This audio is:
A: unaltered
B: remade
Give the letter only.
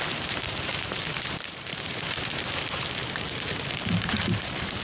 B